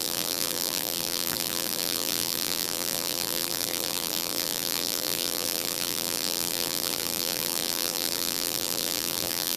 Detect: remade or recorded remade